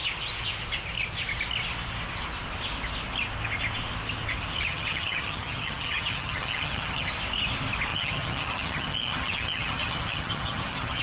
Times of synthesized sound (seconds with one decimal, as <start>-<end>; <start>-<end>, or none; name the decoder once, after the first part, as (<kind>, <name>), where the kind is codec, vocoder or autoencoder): 4.7-7.1 (vocoder, HiFi-GAN); 7.9-11.0